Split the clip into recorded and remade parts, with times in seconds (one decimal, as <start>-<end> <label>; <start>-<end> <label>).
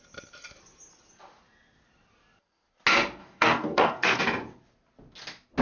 0.0-3.2 recorded; 3.2-4.2 remade; 4.2-5.6 recorded